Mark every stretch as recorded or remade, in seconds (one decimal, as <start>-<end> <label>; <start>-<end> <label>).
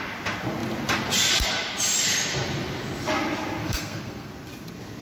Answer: 0.0-3.6 recorded; 3.6-4.3 remade; 4.3-5.0 recorded